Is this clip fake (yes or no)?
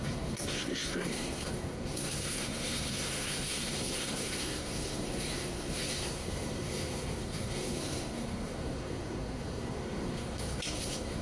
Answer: yes